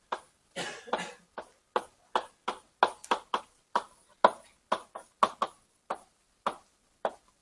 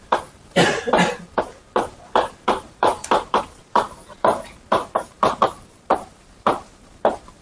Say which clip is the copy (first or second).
second